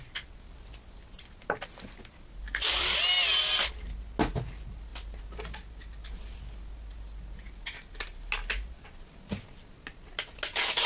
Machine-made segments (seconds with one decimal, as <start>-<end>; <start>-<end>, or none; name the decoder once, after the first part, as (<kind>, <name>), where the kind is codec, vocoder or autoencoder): none